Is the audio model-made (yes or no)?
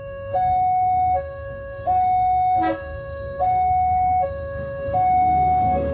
yes